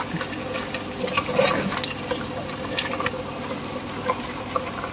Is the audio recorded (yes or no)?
yes